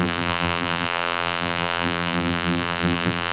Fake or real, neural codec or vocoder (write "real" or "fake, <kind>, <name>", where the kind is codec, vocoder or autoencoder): fake, vocoder, BigVGAN v2